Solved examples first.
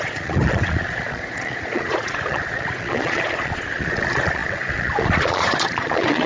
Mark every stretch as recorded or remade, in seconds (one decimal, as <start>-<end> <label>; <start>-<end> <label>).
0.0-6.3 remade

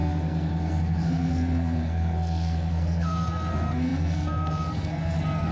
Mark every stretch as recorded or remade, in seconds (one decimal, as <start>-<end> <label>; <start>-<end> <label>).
0.0-5.5 remade

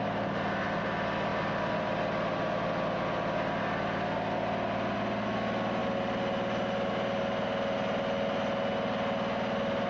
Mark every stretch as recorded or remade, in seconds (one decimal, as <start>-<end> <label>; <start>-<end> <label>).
0.0-9.9 recorded

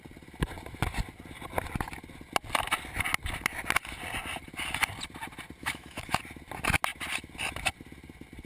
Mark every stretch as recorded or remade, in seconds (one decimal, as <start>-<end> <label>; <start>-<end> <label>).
0.0-5.6 recorded; 5.6-6.2 remade; 6.2-8.5 recorded